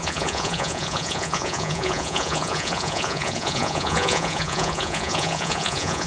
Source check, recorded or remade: remade